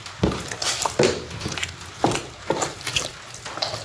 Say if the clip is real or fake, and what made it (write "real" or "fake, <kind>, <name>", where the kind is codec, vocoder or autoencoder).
real